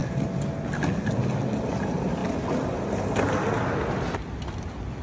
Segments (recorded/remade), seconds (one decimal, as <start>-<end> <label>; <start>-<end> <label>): 0.0-5.0 recorded